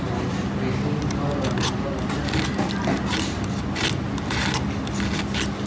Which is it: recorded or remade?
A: recorded